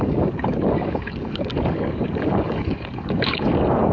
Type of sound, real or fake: fake